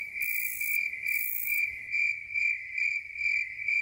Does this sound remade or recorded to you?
recorded